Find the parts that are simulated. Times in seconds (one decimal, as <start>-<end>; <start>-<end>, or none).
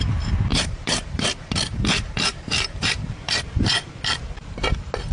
0.5-3.5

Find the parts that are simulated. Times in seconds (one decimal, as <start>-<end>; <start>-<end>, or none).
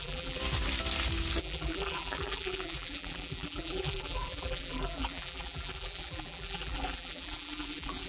0.0-0.4; 1.4-8.1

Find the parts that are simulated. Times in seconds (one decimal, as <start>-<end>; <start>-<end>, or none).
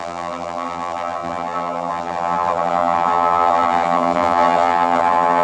0.0-5.4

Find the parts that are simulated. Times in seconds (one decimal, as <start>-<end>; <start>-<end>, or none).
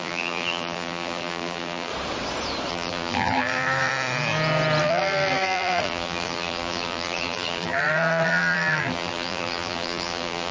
0.0-1.9; 2.7-3.9; 4.8-10.5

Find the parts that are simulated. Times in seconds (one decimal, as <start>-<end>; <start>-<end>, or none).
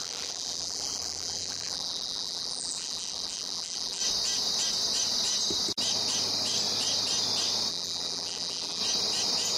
0.0-4.0; 7.7-8.8